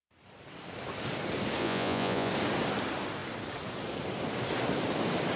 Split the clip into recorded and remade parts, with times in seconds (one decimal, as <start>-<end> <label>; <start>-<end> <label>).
0.0-1.6 recorded; 1.6-2.3 remade; 2.3-5.4 recorded